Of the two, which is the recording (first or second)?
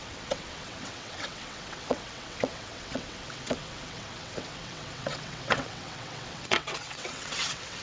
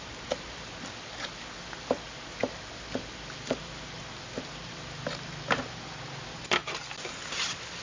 second